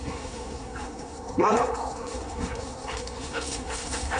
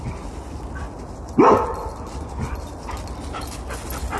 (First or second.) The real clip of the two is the second